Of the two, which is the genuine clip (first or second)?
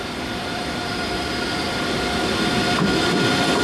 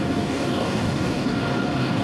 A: first